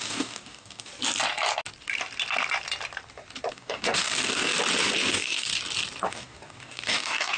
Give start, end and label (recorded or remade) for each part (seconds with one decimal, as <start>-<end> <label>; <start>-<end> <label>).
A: 0.0-0.9 remade; 0.9-3.5 recorded; 3.5-4.5 remade; 4.5-5.1 recorded; 5.1-5.5 remade; 5.5-6.1 recorded; 6.1-7.4 remade